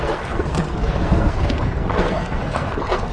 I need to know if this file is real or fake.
fake